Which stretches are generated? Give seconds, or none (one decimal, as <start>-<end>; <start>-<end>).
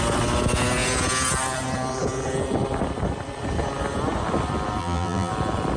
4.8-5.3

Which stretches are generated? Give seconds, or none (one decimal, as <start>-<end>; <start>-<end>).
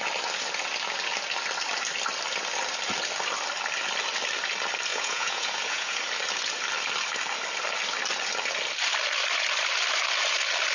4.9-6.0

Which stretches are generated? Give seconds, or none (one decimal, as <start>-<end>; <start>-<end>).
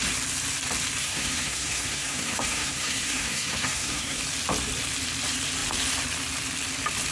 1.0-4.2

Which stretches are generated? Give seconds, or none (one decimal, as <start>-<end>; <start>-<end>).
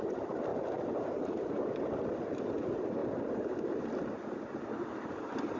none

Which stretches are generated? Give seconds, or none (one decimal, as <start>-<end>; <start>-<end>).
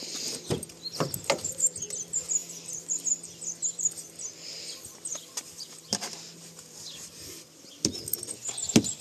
none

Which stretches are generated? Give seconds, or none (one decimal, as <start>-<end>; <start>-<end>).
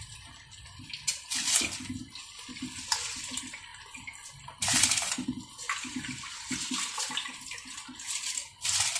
none